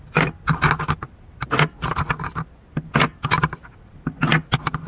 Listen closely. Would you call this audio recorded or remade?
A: recorded